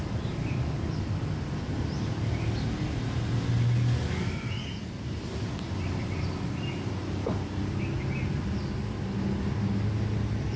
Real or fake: real